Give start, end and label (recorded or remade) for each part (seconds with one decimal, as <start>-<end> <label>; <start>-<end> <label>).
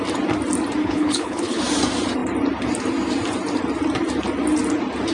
0.0-0.8 recorded; 0.8-1.6 remade; 1.6-5.1 recorded